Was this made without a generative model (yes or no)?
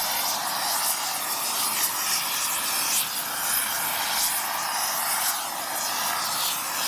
yes